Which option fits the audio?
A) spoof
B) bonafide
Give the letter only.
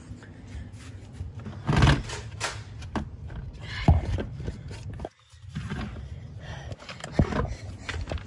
B